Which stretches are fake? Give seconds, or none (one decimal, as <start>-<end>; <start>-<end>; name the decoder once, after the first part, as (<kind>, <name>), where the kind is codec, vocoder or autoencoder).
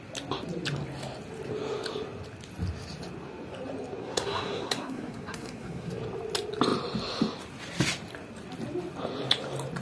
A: 4.0-6.0 (codec, SNAC)